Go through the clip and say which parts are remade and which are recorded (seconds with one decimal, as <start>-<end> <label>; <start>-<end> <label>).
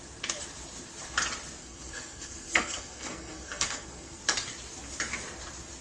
0.0-1.6 recorded; 1.6-4.2 remade; 4.2-5.8 recorded